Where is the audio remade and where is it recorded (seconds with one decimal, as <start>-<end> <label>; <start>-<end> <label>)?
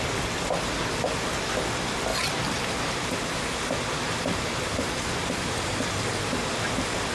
0.0-2.1 recorded; 2.1-6.4 remade; 6.4-7.1 recorded